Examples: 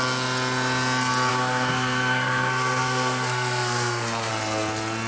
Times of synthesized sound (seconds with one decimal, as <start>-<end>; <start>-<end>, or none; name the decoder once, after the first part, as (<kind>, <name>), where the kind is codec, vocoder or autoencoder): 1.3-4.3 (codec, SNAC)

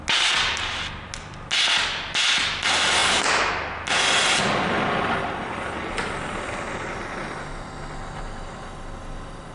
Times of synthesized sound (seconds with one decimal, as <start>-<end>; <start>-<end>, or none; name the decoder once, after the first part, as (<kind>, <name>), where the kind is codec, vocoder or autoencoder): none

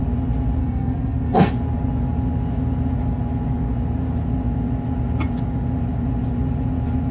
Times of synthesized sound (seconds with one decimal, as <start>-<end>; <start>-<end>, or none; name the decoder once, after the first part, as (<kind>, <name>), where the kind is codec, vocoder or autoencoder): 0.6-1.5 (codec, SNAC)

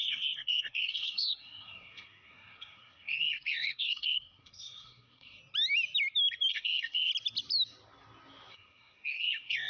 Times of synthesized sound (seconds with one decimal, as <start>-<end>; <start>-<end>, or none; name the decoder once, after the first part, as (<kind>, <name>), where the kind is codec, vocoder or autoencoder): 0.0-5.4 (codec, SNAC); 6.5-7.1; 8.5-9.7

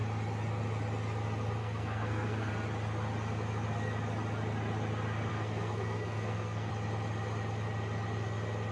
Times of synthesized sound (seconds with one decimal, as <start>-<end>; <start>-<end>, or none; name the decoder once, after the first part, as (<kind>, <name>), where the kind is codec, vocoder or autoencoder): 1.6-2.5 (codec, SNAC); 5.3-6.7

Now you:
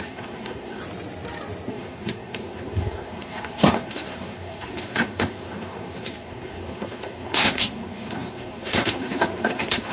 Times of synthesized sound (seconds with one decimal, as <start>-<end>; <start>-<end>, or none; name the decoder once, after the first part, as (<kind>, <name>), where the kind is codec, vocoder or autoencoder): 0.0-0.8 (codec, SNAC); 1.7-9.9